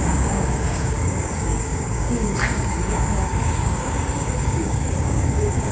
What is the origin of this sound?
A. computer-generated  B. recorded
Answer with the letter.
A